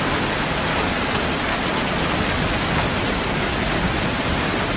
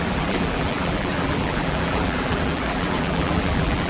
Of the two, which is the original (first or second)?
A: first